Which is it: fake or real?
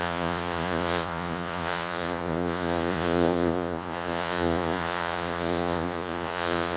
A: fake